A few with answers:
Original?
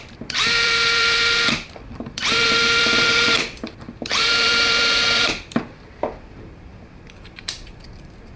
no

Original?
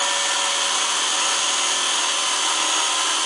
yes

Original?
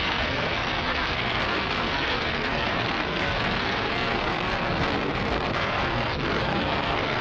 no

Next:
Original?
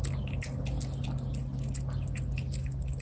yes